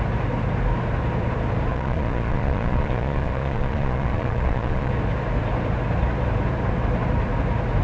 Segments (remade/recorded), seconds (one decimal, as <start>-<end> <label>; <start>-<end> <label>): 0.0-1.7 recorded; 1.7-4.9 remade; 4.9-7.8 recorded